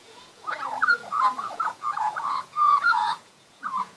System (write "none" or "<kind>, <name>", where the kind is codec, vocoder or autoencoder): vocoder, Vocos